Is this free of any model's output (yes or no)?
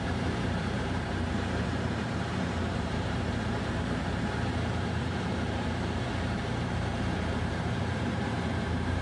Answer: no